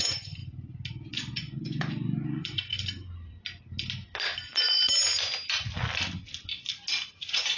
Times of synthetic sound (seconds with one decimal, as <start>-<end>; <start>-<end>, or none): 0.0-0.4; 1.1-2.7; 7.1-7.6